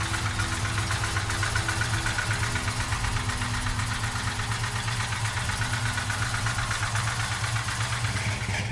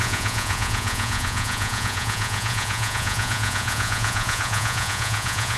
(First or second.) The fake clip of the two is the second